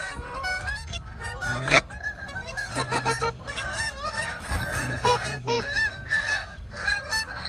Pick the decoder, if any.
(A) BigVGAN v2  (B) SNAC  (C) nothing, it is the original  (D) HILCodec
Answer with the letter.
B